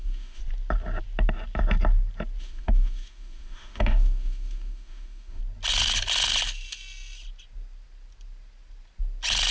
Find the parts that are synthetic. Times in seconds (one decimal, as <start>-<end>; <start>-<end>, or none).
0.0-0.4; 2.4-5.4